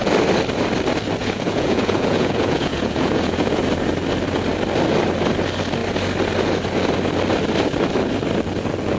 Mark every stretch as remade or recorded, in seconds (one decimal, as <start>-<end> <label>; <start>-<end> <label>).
0.0-1.2 recorded; 1.2-3.6 remade; 3.6-9.0 recorded